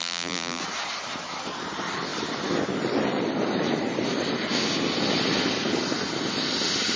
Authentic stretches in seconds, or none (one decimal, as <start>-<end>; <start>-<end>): 0.6-7.0

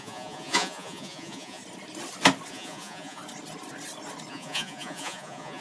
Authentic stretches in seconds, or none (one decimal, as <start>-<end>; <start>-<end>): 1.6-2.5; 3.2-4.3